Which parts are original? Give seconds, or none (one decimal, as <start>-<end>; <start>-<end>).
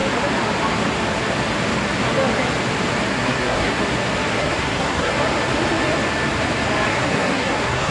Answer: 0.0-3.1; 3.8-4.4; 5.1-6.9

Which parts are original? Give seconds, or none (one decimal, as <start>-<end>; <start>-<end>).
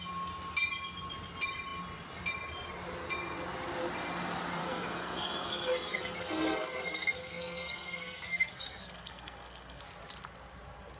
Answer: 0.0-4.6; 9.8-11.0